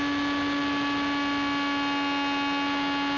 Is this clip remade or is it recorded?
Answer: recorded